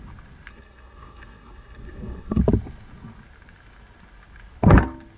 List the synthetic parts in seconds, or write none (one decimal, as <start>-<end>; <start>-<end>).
0.5-2.4